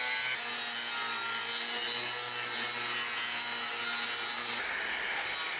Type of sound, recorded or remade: recorded